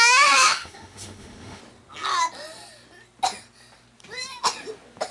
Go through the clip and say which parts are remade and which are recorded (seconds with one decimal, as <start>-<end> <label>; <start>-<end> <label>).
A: 0.0-1.6 remade; 1.6-5.1 recorded